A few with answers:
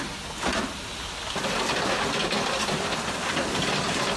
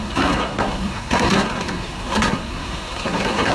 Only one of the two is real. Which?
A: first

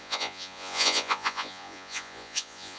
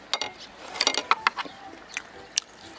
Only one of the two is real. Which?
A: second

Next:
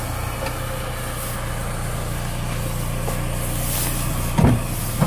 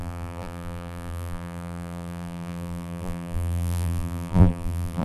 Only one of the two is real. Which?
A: first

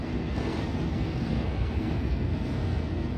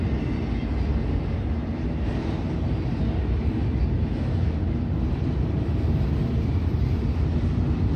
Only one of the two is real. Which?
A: second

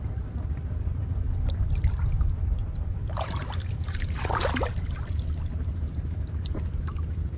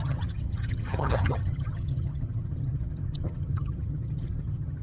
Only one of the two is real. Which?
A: first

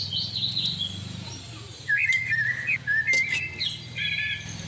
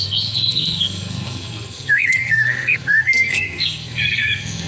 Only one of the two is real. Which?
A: first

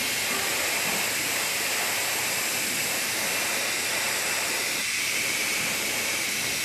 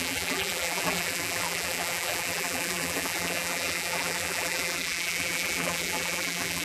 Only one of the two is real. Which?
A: first